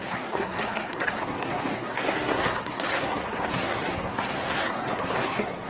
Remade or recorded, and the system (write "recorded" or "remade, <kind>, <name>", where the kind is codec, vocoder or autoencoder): remade, codec, SNAC